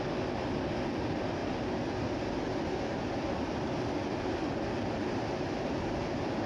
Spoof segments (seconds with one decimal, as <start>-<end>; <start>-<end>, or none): none